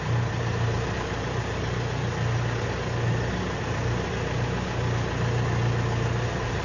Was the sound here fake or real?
real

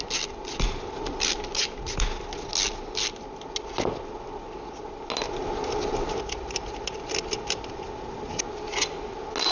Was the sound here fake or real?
real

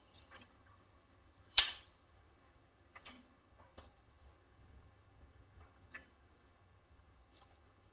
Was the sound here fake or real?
fake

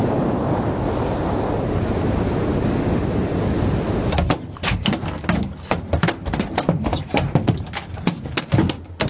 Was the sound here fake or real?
real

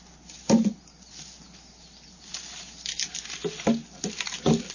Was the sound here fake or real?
real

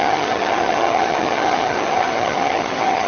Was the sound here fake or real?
fake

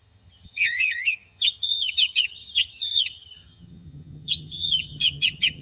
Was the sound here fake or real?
fake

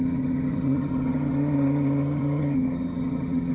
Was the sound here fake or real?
fake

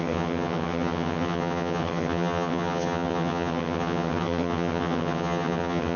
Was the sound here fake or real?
fake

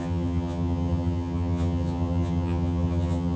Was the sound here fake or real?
fake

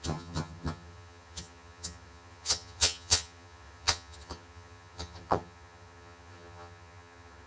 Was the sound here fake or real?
fake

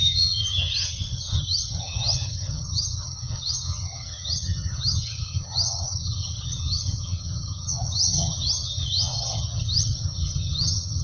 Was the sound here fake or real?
fake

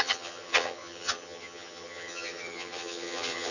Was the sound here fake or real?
fake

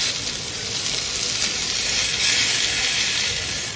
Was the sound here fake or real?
real